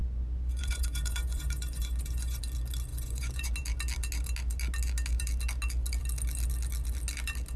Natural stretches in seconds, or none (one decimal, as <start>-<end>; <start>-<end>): 2.4-2.9; 3.5-7.6

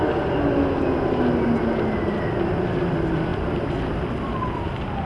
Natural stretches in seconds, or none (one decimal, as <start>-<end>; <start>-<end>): 0.0-5.1

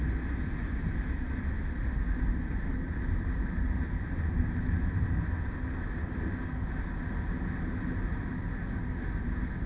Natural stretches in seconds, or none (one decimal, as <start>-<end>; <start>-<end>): 0.0-2.3; 4.8-9.7